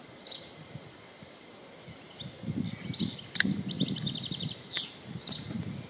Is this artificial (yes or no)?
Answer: no